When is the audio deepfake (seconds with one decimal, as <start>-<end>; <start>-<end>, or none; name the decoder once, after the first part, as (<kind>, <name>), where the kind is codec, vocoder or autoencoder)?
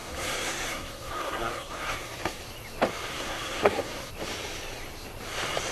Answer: 0.0-2.4 (codec, SNAC); 3.1-4.1